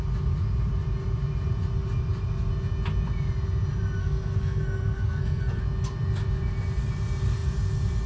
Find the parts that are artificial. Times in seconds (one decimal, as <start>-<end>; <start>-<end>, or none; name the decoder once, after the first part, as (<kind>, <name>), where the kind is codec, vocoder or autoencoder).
4.0-5.6 (codec, SNAC)